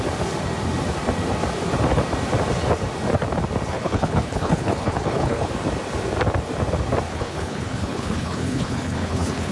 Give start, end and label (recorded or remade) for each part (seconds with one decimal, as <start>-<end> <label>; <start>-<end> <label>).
0.0-3.7 recorded; 3.7-5.5 remade; 5.5-7.1 recorded; 7.1-9.5 remade